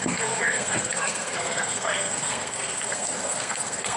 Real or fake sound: fake